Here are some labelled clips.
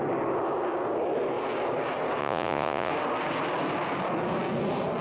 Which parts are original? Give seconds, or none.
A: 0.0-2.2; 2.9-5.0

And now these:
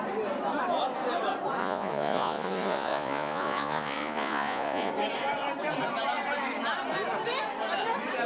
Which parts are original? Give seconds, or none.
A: 0.0-1.6; 4.9-8.3

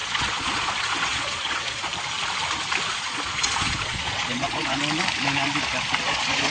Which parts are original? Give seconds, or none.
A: 1.9-2.9; 4.8-6.0

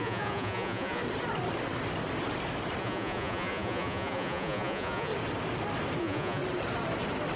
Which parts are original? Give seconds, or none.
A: 1.0-2.8; 5.1-6.0; 6.4-7.4

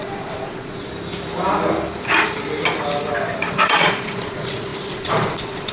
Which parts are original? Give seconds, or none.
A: 0.9-3.5

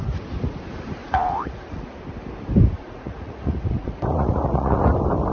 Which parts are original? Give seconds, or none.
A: 0.0-1.0; 1.9-2.8; 4.8-5.3